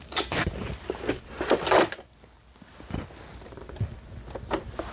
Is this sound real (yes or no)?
yes